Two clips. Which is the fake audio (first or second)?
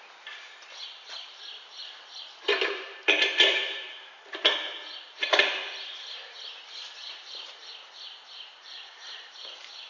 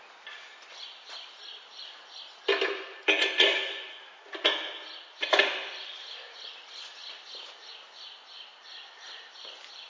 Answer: first